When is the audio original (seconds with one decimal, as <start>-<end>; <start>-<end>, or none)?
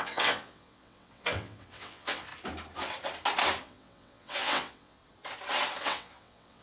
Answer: 2.3-3.6; 5.0-5.8